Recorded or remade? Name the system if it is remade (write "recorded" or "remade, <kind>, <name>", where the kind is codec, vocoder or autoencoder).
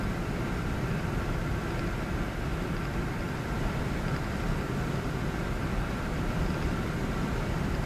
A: recorded